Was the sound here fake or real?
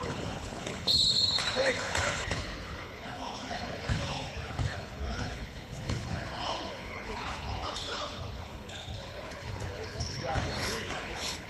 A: fake